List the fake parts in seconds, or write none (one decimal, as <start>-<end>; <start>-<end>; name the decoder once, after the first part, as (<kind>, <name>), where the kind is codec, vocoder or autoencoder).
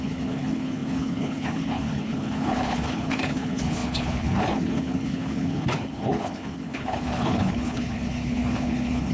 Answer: 0.0-9.1 (codec, HILCodec)